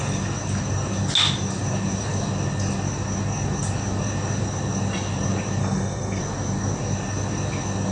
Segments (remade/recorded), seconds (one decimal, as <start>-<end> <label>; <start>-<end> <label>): 0.0-5.6 recorded; 5.6-6.2 remade; 6.2-7.9 recorded